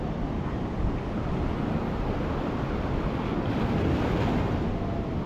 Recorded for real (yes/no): yes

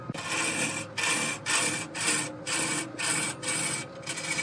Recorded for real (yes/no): yes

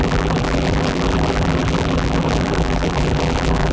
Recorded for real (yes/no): no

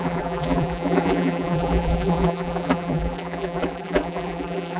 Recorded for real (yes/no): no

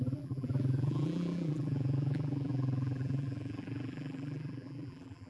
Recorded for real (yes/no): no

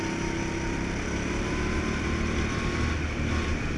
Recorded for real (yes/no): yes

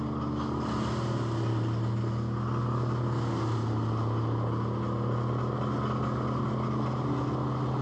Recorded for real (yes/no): yes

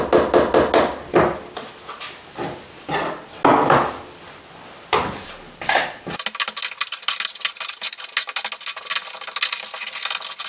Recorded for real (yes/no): yes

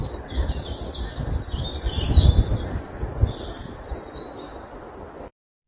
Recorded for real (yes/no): no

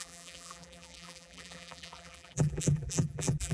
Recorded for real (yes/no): no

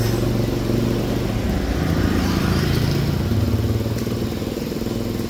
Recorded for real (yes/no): yes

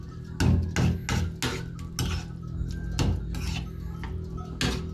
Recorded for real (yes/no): yes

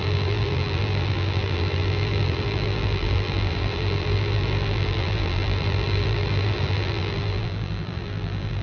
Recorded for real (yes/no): no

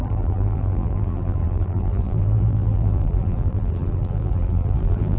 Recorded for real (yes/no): no